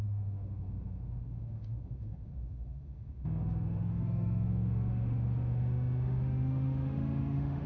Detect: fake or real fake